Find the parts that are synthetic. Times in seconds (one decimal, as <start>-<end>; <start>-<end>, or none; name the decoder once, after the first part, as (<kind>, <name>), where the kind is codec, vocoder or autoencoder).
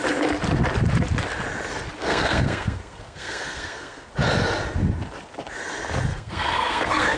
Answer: 2.0-4.1 (codec, SNAC); 6.1-7.2